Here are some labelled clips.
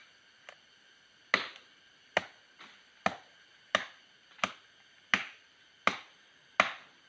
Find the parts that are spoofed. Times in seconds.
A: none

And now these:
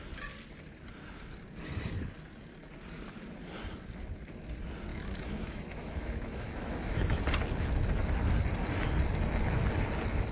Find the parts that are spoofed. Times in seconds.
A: 4.9-7.2 (autoencoder, DAC-VAE)